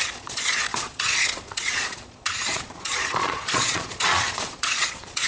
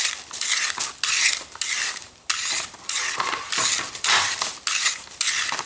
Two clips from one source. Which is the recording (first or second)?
second